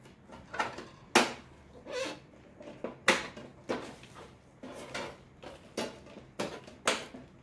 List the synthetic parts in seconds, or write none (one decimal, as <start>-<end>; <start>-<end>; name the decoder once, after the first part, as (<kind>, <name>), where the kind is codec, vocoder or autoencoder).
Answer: none